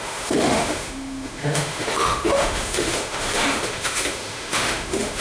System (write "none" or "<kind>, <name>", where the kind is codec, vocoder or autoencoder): autoencoder, DAC-VAE